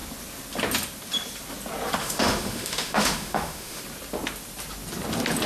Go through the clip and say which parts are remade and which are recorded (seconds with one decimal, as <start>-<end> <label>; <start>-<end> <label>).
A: 0.0-2.0 recorded; 2.0-3.8 remade; 3.8-5.5 recorded

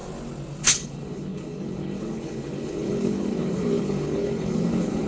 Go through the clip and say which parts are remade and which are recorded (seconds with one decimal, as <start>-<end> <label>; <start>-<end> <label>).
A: 0.0-0.6 recorded; 0.6-5.1 remade

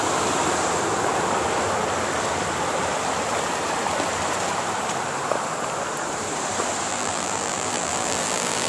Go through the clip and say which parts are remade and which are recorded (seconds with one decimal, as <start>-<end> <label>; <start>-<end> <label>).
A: 0.0-6.9 recorded; 6.9-8.7 remade

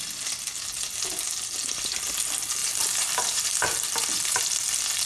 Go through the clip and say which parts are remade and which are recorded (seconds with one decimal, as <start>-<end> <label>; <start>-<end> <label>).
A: 0.0-2.6 recorded; 2.6-4.4 remade; 4.4-5.1 recorded

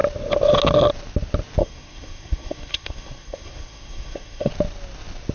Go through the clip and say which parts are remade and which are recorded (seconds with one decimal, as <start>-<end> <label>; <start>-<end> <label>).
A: 0.0-1.6 recorded; 1.6-4.5 remade; 4.5-5.3 recorded